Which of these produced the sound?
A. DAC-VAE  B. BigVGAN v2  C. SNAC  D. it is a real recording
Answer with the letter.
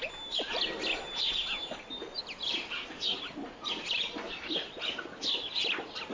D